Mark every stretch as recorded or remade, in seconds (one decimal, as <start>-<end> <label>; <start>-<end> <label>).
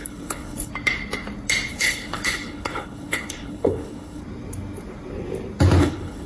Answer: 0.0-0.7 remade; 0.7-1.7 recorded; 1.7-4.2 remade; 4.2-5.8 recorded; 5.8-6.3 remade